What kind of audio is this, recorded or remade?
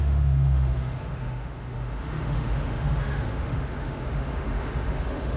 remade